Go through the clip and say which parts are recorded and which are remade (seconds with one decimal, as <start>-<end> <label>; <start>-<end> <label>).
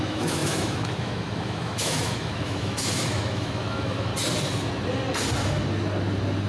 0.0-4.1 remade; 4.1-6.5 recorded